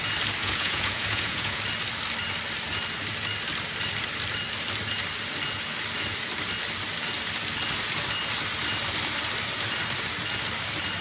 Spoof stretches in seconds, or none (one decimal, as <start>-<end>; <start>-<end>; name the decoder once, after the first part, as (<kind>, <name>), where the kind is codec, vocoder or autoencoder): 0.4-1.6 (vocoder, Vocos)